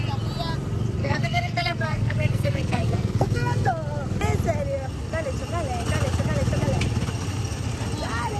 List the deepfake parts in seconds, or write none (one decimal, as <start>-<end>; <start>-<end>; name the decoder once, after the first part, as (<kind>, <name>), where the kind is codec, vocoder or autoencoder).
1.0-3.7 (codec, SNAC)